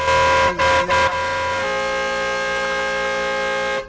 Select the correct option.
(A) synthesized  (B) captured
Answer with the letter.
B